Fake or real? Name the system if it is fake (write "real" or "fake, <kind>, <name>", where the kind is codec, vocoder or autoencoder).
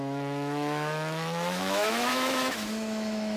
fake, autoencoder, DAC-VAE